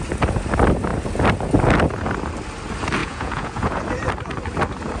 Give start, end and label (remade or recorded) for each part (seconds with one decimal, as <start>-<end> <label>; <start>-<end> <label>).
0.0-3.0 recorded; 3.0-3.8 remade; 3.8-5.0 recorded